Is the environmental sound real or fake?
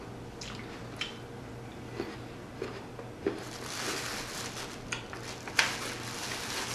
real